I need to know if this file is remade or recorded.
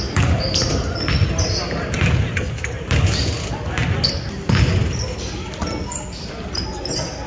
recorded